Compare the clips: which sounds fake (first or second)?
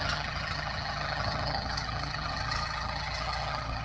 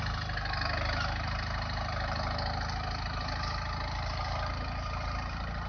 first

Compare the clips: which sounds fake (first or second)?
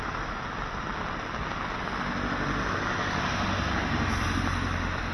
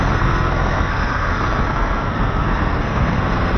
second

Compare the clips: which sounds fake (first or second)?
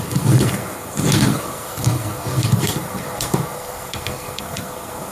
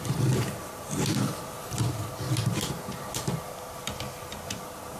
first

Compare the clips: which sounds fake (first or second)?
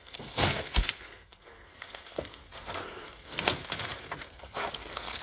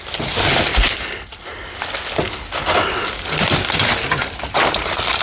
first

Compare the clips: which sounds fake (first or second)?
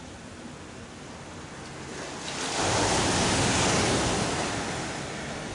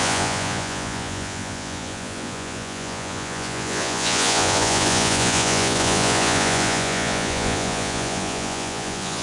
second